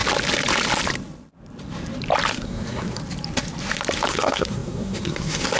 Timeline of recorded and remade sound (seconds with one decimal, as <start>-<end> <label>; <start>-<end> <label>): 0.0-2.3 recorded; 2.3-3.0 remade; 3.0-4.1 recorded; 4.1-5.6 remade